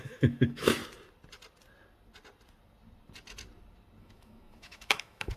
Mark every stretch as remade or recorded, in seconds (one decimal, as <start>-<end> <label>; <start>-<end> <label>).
0.0-0.8 remade; 0.8-4.0 recorded; 4.0-5.4 remade